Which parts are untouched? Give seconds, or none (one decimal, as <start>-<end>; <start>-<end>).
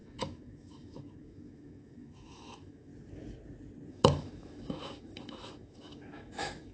2.9-3.9